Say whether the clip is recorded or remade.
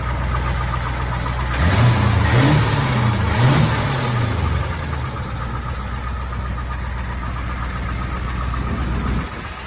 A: recorded